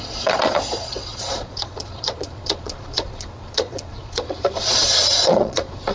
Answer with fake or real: fake